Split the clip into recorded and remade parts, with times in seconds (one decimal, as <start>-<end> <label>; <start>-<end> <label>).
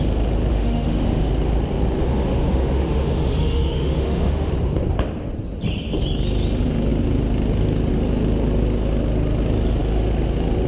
0.0-0.5 recorded; 0.5-1.3 remade; 1.3-2.0 recorded; 2.0-4.5 remade; 4.5-10.7 recorded